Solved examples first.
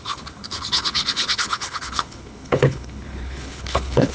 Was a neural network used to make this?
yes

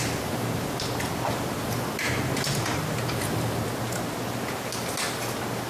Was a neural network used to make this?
no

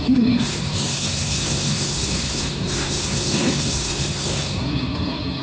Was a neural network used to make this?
yes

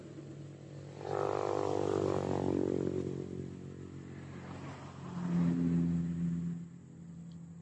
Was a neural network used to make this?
no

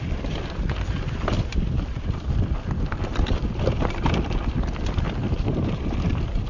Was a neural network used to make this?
no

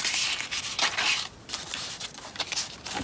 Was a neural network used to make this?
no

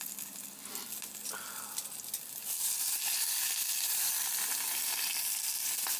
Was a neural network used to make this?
no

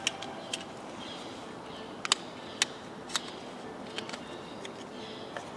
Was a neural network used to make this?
no